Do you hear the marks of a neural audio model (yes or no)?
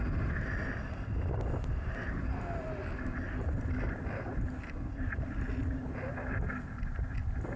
no